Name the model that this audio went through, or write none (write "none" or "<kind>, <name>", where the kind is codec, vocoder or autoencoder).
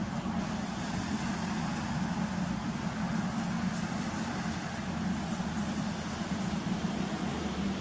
none